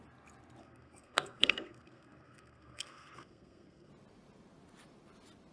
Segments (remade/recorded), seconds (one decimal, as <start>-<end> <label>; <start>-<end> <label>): 0.0-0.6 recorded; 0.6-3.9 remade; 3.9-5.5 recorded